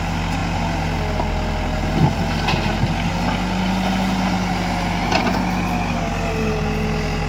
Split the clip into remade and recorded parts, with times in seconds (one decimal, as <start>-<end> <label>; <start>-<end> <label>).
0.0-7.3 recorded

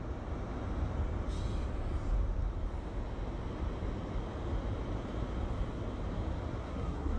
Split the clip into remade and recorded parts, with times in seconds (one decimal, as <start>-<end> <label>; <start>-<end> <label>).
0.0-6.6 recorded; 6.6-7.2 remade